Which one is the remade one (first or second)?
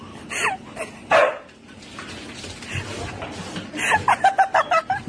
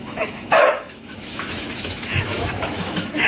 second